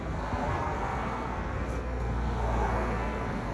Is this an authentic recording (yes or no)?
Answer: no